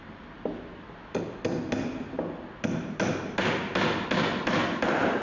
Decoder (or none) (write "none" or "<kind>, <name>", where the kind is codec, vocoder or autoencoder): none